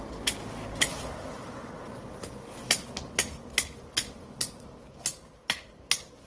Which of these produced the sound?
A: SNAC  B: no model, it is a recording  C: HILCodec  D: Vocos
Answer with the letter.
B